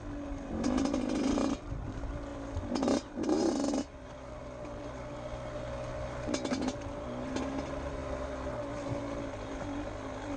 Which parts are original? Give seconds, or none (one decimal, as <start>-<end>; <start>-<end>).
0.0-10.4